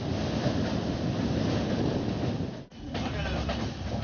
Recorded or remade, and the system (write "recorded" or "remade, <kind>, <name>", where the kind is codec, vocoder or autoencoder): recorded